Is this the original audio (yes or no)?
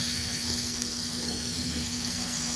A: no